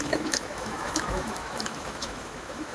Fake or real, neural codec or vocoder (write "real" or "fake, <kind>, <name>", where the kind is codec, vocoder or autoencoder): fake, autoencoder, DAC-VAE